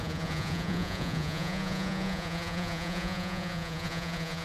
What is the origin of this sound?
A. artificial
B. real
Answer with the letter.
A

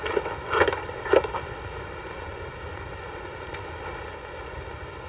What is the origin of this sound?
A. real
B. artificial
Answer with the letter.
A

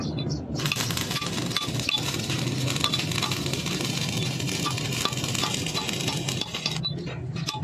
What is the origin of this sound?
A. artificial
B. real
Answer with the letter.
B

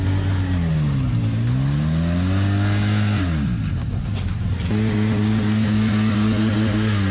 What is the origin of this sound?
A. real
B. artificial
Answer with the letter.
A